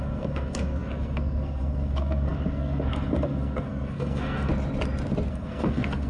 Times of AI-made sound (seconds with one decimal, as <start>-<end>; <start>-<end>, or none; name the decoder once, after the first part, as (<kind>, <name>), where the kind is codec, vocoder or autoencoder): 0.0-4.5 (codec, SNAC); 5.3-6.1

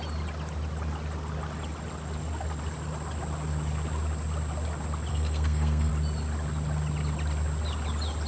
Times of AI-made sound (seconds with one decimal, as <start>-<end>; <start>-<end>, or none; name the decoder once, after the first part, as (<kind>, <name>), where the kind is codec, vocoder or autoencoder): 5.1-5.9 (codec, SNAC)